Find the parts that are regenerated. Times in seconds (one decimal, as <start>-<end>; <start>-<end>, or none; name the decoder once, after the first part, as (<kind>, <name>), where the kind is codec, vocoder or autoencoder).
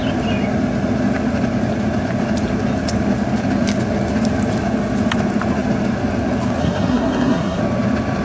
6.6-7.6 (codec, SNAC)